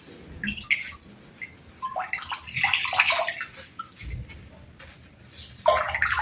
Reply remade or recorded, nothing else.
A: recorded